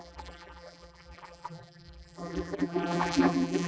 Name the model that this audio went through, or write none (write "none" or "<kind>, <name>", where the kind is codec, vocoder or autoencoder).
vocoder, BigVGAN v2